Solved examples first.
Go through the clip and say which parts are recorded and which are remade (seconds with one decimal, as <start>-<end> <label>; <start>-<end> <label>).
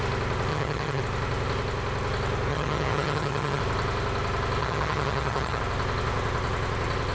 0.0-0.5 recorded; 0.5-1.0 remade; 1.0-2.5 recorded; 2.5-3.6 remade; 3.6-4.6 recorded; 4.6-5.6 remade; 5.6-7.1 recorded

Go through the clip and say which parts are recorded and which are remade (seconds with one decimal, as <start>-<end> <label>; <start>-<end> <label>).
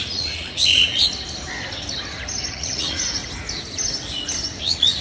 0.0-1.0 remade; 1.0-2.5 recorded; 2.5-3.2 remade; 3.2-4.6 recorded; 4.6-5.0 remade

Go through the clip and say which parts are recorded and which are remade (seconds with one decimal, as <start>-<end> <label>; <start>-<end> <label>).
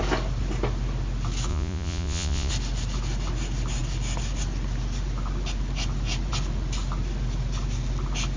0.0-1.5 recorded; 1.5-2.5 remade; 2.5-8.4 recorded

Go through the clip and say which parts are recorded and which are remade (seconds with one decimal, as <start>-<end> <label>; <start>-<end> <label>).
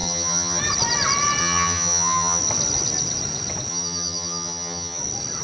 0.0-0.6 remade; 0.6-1.4 recorded; 1.4-2.4 remade; 2.4-3.7 recorded; 3.7-5.0 remade; 5.0-5.4 recorded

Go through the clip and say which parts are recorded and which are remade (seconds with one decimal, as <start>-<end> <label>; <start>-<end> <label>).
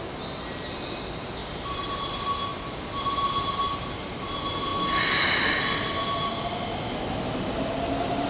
0.0-1.4 recorded; 1.4-2.0 remade; 2.0-2.5 recorded; 2.5-4.2 remade; 4.2-8.3 recorded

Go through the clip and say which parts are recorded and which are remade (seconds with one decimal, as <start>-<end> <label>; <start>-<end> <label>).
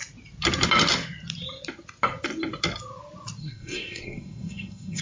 0.0-3.4 recorded; 3.4-5.0 remade